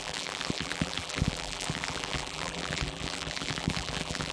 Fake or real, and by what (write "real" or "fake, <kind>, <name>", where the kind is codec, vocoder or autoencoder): fake, vocoder, BigVGAN v2